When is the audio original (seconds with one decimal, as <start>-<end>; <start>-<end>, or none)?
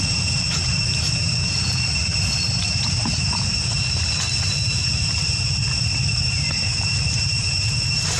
none